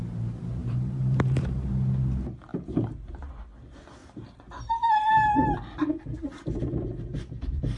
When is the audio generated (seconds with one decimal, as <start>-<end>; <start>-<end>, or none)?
0.6-1.7; 4.0-4.6; 5.8-7.1